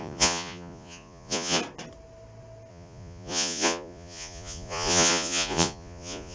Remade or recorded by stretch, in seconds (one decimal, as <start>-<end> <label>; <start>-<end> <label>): 0.0-1.6 remade; 1.6-2.7 recorded; 2.7-6.3 remade